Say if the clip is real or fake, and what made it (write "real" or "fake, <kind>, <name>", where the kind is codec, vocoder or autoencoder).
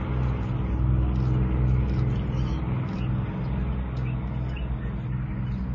real